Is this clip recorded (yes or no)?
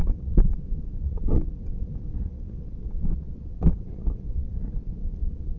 no